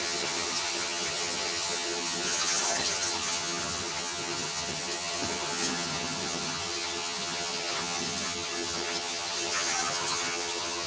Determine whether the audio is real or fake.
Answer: fake